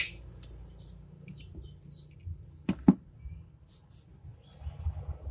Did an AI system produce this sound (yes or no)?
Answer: no